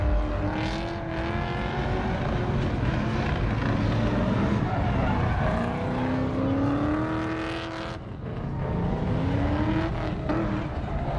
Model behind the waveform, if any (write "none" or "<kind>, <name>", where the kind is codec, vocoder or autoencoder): none